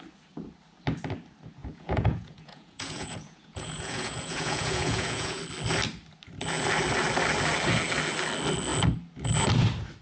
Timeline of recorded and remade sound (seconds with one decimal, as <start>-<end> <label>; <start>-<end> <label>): 0.0-1.6 recorded; 1.6-5.4 remade; 5.4-10.0 recorded